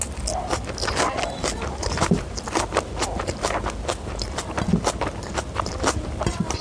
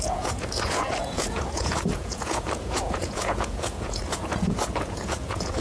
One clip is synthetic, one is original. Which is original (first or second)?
first